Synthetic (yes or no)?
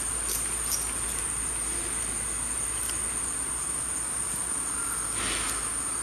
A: no